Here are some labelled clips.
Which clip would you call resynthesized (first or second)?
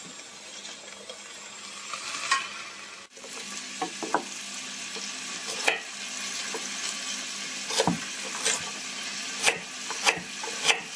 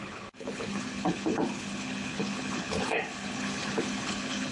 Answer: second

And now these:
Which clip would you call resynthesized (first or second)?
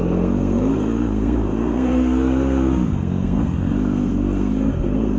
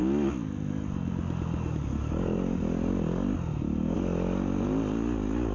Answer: first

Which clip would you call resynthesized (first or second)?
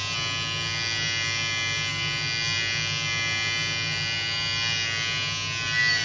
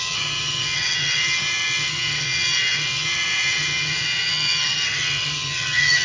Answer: second